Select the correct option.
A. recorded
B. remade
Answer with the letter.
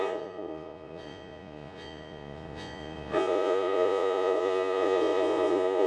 B